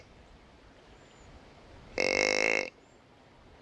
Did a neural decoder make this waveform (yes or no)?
no